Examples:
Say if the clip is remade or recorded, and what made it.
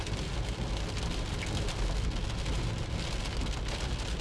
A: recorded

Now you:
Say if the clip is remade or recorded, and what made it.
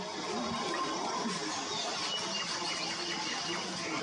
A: recorded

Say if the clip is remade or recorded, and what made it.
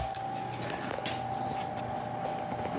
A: recorded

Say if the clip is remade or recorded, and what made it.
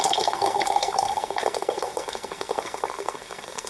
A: remade, codec, SNAC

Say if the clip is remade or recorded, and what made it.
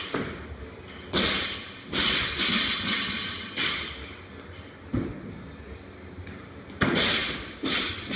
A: recorded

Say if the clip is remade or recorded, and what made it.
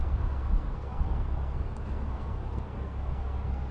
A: remade, codec, SNAC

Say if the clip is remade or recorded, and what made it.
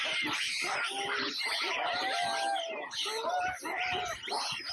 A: recorded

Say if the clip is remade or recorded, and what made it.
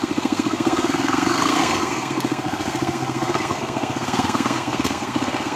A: remade, codec, SNAC